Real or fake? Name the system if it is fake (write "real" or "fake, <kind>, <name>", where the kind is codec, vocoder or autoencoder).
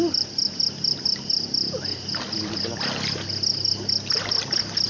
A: real